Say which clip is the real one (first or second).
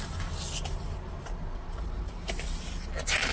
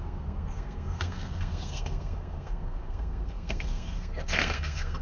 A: first